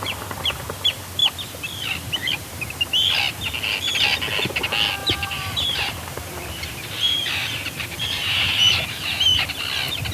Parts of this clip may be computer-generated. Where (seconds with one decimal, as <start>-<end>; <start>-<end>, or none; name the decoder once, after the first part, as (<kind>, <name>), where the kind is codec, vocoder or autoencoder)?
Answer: 5.0-9.6 (vocoder, BigVGAN v2)